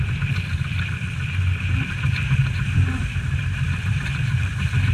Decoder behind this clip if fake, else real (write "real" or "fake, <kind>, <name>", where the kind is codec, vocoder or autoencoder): fake, vocoder, BigVGAN v2